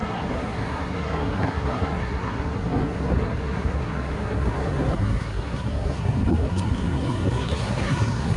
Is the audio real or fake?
fake